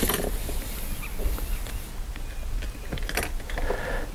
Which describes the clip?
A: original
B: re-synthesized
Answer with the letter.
A